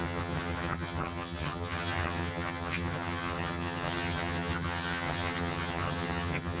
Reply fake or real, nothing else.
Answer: fake